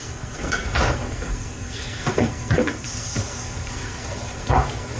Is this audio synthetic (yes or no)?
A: yes